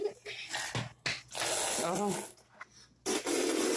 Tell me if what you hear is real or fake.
real